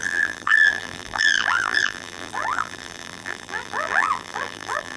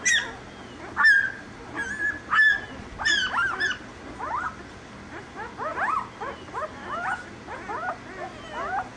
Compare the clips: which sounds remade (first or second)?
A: first